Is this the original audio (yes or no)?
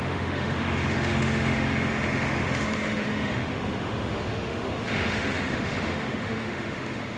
no